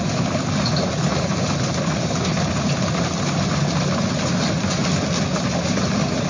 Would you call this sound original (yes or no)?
yes